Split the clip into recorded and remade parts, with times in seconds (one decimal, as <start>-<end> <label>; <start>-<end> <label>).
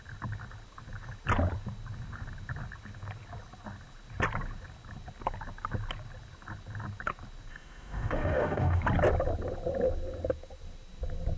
0.0-7.5 recorded; 7.5-8.8 remade; 8.8-11.4 recorded